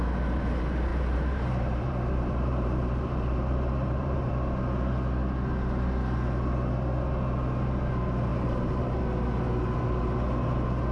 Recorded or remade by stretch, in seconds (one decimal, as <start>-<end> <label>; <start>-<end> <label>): 0.0-0.9 recorded; 0.9-4.3 remade; 4.3-8.3 recorded; 8.3-9.0 remade; 9.0-10.9 recorded